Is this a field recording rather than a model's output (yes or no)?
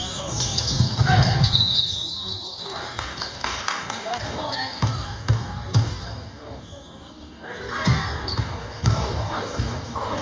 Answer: no